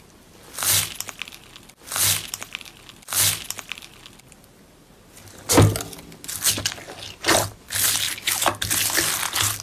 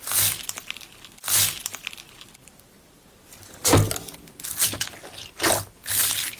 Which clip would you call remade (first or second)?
second